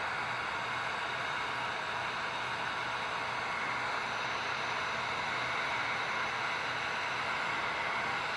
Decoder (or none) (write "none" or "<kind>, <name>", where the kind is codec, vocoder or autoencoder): none